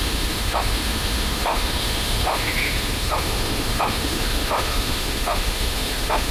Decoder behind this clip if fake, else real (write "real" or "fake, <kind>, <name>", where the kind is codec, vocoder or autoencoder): fake, autoencoder, DAC-VAE